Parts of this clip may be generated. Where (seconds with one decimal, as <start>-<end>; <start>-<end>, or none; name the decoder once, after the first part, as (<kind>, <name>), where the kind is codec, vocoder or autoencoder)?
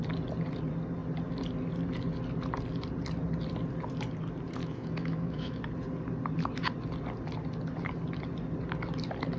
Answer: 4.6-5.6 (autoencoder, DAC-VAE)